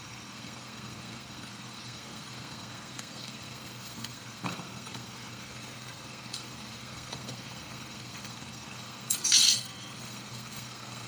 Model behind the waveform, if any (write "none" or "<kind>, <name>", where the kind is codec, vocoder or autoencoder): codec, SNAC